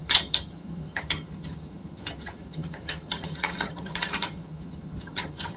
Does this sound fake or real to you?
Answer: fake